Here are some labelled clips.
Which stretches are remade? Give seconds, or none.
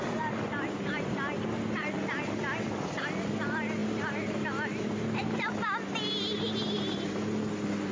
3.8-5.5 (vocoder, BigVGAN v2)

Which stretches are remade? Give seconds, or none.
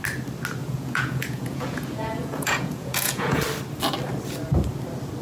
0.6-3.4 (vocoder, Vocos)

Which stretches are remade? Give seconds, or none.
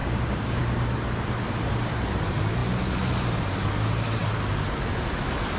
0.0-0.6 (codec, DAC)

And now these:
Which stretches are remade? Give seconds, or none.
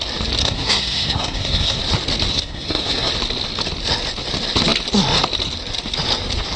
0.4-1.8 (codec, SNAC); 2.3-3.1